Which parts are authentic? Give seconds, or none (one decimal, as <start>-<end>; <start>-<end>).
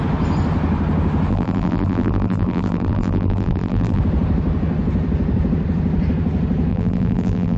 0.0-1.3; 4.0-6.7